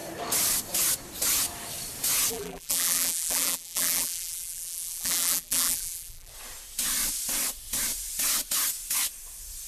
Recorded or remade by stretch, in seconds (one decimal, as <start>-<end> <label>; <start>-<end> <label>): 0.0-2.3 recorded; 2.3-6.3 remade; 6.3-9.7 recorded